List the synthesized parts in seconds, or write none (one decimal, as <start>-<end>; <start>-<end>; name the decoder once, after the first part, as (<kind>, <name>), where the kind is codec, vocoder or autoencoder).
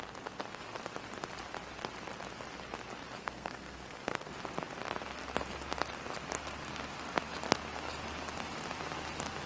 3.2-4.3 (codec, SNAC)